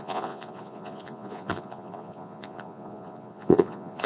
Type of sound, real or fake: fake